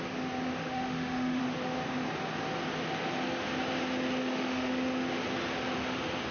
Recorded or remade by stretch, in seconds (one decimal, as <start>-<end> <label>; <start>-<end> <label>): 0.0-0.6 recorded; 0.6-1.4 remade; 1.4-4.2 recorded; 4.2-4.7 remade; 4.7-6.3 recorded